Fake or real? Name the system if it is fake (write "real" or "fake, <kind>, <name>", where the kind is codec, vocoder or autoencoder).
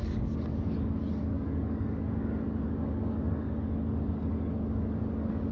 fake, codec, DAC